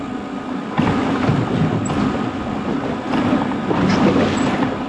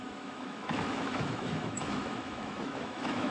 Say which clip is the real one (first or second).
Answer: first